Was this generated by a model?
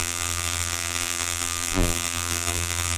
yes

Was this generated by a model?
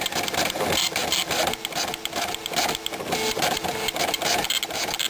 no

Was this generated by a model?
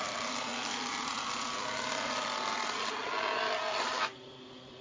no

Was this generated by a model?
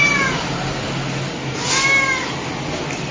no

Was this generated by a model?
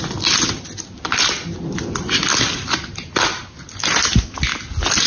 no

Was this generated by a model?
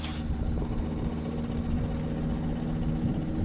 no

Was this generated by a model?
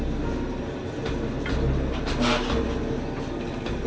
no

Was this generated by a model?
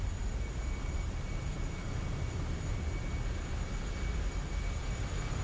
no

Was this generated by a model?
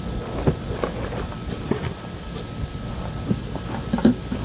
no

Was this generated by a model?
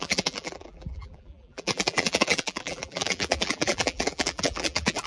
yes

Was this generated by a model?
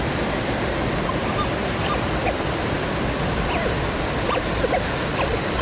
yes